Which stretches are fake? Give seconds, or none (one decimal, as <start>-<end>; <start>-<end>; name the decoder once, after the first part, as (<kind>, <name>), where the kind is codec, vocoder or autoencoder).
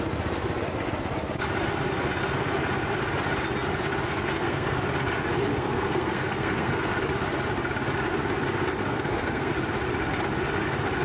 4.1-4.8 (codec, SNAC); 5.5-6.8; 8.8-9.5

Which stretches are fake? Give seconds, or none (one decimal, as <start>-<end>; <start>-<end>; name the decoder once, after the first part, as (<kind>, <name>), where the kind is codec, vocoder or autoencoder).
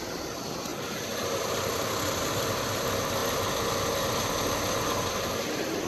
none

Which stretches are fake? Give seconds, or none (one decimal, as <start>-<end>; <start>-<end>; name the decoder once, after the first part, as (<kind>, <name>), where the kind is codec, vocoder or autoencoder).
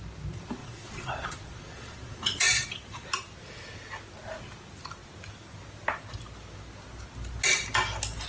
0.6-3.1 (vocoder, Vocos)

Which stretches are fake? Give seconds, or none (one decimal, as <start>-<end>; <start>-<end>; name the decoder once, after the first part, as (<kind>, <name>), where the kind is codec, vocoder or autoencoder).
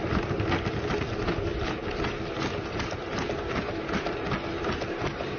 none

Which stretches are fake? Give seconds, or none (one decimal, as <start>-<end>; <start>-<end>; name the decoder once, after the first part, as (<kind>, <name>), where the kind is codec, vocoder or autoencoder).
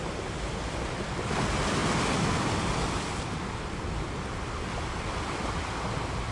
none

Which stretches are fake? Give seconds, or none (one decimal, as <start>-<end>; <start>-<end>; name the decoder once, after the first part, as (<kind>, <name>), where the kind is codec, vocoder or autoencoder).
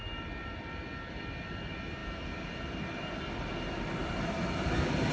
none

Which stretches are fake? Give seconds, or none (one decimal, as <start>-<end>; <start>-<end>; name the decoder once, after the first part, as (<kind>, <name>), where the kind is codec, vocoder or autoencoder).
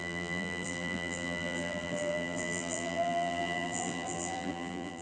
0.0-5.0 (vocoder, BigVGAN v2)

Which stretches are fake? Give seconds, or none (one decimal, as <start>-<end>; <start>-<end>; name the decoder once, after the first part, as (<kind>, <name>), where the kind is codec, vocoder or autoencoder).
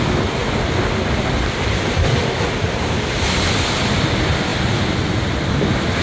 none